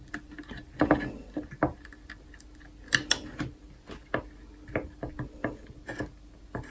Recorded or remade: recorded